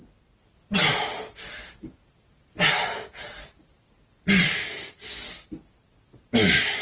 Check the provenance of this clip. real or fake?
real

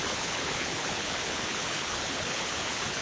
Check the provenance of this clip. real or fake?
fake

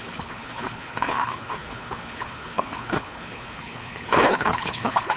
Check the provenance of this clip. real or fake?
fake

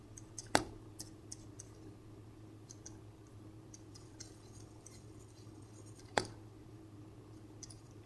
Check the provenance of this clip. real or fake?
real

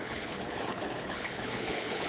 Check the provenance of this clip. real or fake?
fake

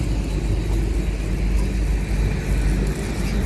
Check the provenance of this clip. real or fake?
real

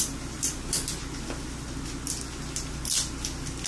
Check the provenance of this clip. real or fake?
real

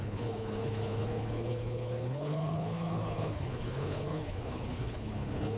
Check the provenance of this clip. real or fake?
fake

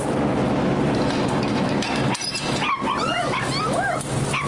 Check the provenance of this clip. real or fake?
real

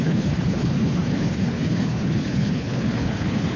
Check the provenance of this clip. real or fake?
fake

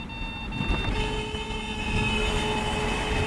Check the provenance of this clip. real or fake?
real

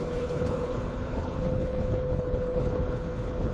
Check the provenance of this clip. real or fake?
fake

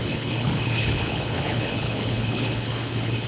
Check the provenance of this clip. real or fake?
fake